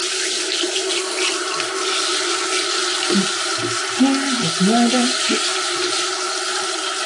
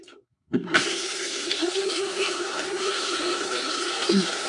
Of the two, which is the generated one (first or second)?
second